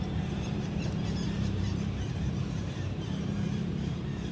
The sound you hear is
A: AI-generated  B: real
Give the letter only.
A